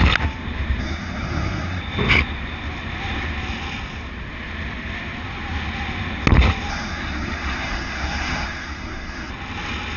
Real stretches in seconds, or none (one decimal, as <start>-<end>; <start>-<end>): 0.0-0.8; 1.8-6.7; 9.3-10.0